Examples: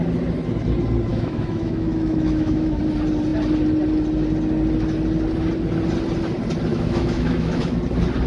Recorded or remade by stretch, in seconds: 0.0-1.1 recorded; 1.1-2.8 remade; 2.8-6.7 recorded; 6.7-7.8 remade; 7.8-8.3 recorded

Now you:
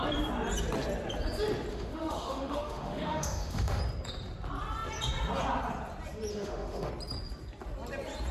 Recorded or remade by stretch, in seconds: 0.0-1.7 recorded; 1.7-3.8 remade; 3.8-6.3 recorded; 6.3-6.9 remade; 6.9-8.3 recorded

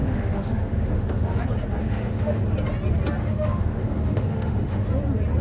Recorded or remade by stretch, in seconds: 0.0-1.4 remade; 1.4-1.8 recorded; 1.8-2.4 remade; 2.4-3.2 recorded; 3.2-4.9 remade; 4.9-5.4 recorded

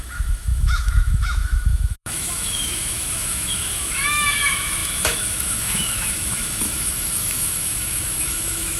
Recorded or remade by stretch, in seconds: 0.0-8.8 remade

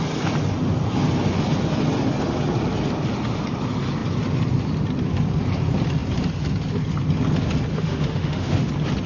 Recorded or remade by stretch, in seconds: 0.0-7.7 recorded; 7.7-8.7 remade; 8.7-9.1 recorded

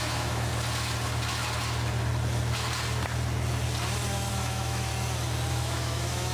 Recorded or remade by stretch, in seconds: 0.0-0.5 remade; 0.5-4.3 recorded; 4.3-4.9 remade; 4.9-5.5 recorded; 5.5-6.3 remade

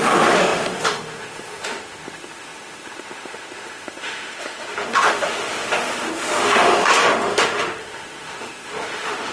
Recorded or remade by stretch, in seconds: 0.0-9.3 remade